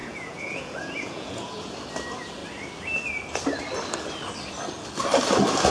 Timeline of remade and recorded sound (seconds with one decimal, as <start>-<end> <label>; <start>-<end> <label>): 0.0-1.7 remade; 1.7-5.7 recorded